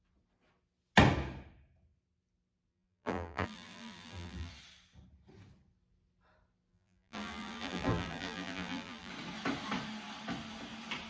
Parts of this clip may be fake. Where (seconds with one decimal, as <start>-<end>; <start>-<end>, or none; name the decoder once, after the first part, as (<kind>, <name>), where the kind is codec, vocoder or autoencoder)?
2.7-4.5 (vocoder, BigVGAN v2); 6.7-9.1